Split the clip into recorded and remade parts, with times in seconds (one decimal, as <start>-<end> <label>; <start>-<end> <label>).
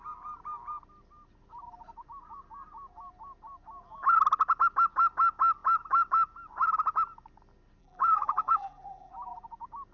0.0-7.8 recorded; 7.8-9.1 remade; 9.1-9.9 recorded